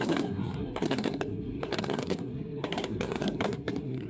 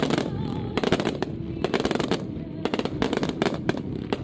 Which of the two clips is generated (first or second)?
first